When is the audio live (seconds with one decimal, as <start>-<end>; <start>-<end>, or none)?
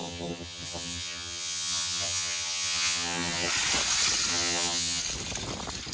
3.5-4.3; 5.0-5.9